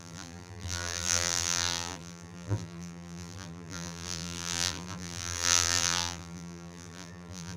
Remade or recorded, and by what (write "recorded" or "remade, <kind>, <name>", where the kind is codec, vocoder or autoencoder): remade, vocoder, BigVGAN v2